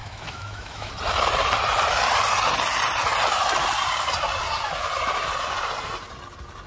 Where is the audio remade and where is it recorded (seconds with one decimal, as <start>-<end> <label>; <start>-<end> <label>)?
0.0-0.9 remade; 0.9-6.7 recorded